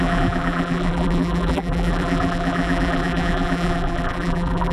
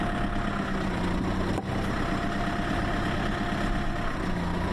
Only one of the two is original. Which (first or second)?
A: second